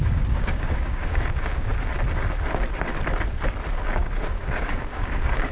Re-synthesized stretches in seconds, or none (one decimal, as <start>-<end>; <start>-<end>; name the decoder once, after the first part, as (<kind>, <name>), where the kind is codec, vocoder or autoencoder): 0.0-1.7 (codec, DAC); 3.7-5.5